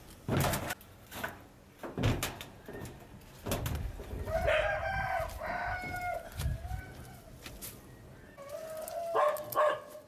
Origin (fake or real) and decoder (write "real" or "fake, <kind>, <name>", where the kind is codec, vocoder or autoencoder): real